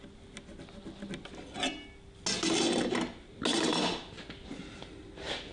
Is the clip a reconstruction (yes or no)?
no